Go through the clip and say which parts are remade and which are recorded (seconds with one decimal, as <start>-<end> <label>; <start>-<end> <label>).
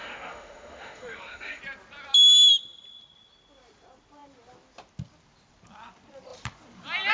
0.0-1.6 remade; 1.6-7.1 recorded